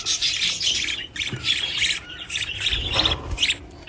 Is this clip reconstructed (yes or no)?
no